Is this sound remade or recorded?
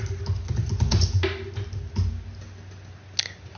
recorded